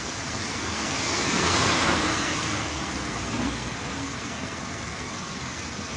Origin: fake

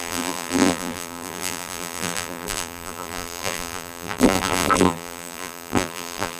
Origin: fake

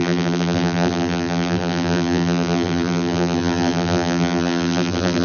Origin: fake